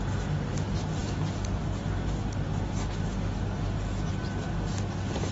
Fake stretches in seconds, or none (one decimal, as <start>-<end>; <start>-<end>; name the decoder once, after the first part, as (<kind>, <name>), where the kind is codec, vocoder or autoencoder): none